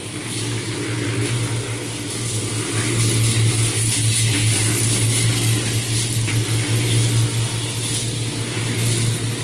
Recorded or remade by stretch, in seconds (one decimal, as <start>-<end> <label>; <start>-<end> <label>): 0.0-9.4 recorded